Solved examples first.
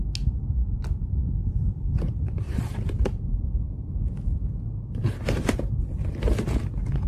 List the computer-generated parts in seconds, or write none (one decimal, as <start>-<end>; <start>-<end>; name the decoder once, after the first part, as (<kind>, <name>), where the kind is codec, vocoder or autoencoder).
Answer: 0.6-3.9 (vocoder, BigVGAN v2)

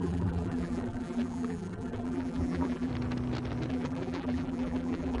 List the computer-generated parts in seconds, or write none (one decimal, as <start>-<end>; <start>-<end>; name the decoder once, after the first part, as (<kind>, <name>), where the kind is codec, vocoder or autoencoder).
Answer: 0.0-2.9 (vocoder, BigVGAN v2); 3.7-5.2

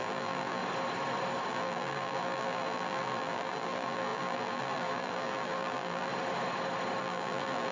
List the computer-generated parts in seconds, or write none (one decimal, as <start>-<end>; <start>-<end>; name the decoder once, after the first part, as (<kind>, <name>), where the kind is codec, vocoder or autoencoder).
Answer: 0.0-0.6 (vocoder, BigVGAN v2); 1.5-6.1; 7.0-7.7

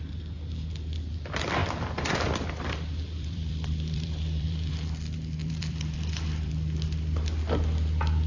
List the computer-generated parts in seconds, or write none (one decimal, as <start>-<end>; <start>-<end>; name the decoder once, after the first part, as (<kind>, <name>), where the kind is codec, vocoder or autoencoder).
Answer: 1.6-4.7 (vocoder, BigVGAN v2); 5.4-6.5

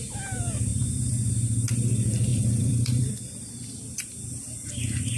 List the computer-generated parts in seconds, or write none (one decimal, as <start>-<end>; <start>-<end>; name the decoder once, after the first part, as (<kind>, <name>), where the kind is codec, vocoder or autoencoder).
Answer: 2.3-4.7 (vocoder, BigVGAN v2)